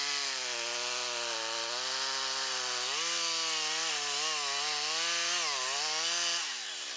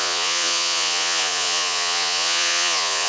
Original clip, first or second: first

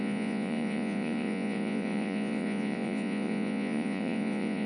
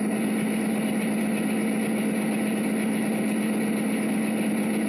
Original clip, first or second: second